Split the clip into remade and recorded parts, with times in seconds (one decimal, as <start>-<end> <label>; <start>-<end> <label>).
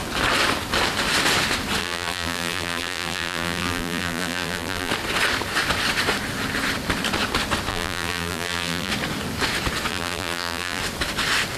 0.0-1.8 recorded; 1.8-4.9 remade; 4.9-7.7 recorded; 7.7-8.9 remade; 8.9-9.9 recorded; 9.9-10.8 remade; 10.8-11.6 recorded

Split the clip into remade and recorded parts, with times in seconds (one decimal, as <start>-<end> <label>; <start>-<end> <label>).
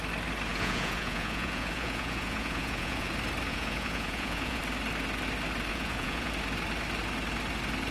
0.0-0.5 recorded; 0.5-3.1 remade; 3.1-3.5 recorded; 3.5-4.6 remade; 4.6-5.7 recorded; 5.7-6.3 remade; 6.3-7.9 recorded